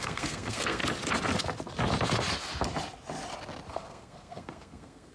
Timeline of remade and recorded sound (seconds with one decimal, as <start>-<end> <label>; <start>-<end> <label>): 0.0-0.8 remade; 0.8-3.7 recorded; 3.7-5.1 remade